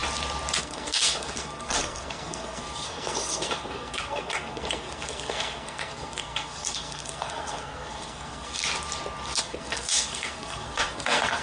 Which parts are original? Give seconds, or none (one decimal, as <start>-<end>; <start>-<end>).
0.0-0.6; 8.6-9.4